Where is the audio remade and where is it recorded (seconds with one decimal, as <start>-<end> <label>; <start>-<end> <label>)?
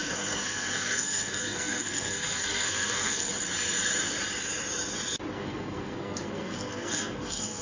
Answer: 0.0-3.3 remade; 3.3-5.3 recorded; 5.3-7.6 remade